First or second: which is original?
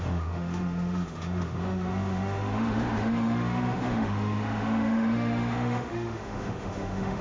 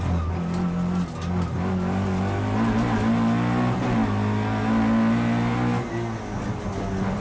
second